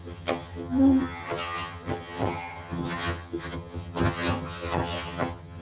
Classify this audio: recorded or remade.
remade